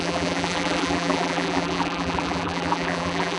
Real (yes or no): no